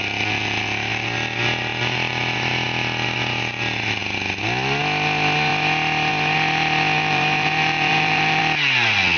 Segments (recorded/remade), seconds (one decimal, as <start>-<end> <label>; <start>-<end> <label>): 0.0-7.1 recorded; 7.1-8.4 remade; 8.4-9.2 recorded